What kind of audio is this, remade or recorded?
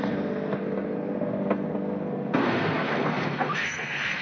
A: remade